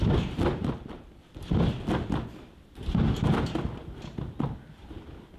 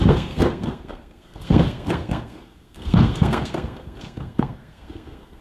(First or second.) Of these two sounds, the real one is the first